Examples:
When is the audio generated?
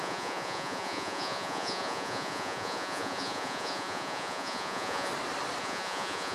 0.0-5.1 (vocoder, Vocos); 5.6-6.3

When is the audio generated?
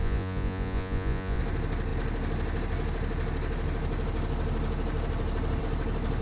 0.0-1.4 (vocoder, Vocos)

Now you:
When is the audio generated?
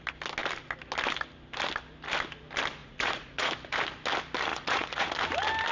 2.8-3.5 (vocoder, Vocos); 4.5-5.1